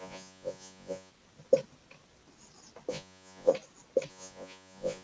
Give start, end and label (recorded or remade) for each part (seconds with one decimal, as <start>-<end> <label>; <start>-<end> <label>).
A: 0.0-1.1 remade; 1.1-2.9 recorded; 2.9-3.5 remade; 3.5-4.1 recorded; 4.1-5.0 remade